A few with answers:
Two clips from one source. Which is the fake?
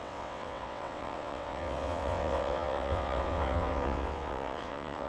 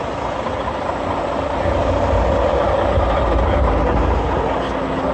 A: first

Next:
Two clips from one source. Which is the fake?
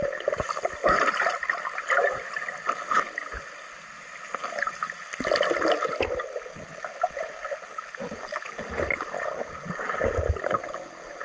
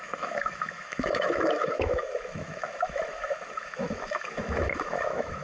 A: second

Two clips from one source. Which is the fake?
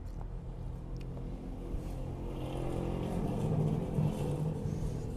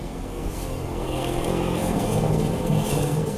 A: second